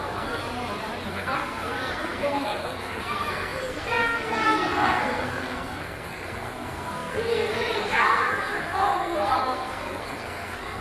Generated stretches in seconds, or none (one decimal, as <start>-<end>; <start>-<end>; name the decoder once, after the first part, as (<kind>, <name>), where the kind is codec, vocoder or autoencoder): 0.0-0.4 (codec, SNAC); 1.1-10.8